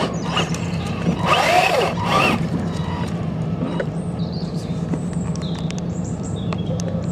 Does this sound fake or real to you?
fake